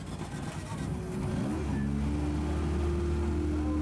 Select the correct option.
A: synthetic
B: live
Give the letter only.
B